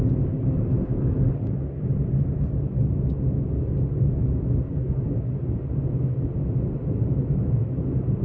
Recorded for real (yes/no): yes